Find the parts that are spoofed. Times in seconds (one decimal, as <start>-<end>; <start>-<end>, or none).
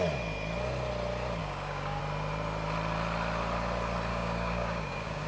1.4-2.0; 4.1-5.3